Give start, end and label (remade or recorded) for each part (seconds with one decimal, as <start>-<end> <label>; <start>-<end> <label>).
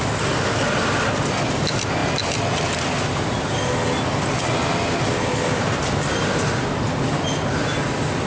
0.0-8.3 recorded